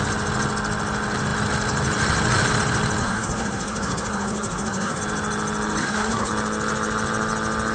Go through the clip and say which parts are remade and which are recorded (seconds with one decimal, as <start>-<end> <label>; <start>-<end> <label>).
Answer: 0.0-3.0 recorded; 3.0-5.0 remade; 5.0-5.8 recorded; 5.8-6.3 remade; 6.3-7.7 recorded